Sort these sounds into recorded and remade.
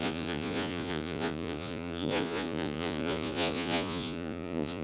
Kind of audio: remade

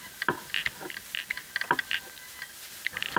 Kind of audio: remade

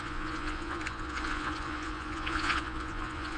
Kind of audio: remade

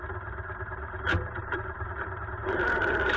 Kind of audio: remade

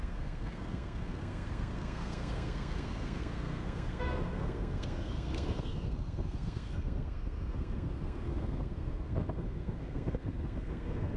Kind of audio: remade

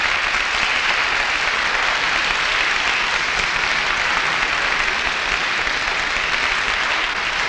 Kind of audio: recorded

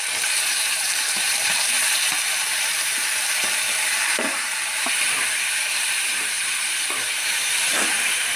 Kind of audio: remade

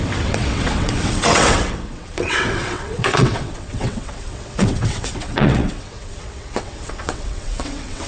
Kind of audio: remade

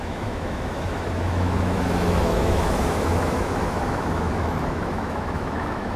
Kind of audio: remade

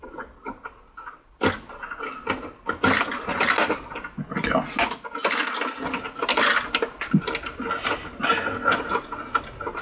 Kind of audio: recorded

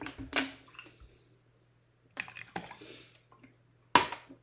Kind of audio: recorded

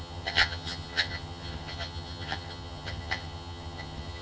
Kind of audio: remade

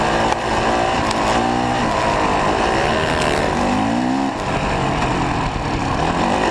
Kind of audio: recorded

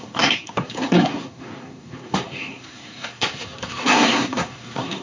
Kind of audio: remade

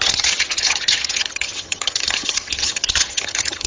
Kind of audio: remade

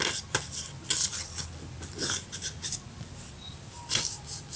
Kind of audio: recorded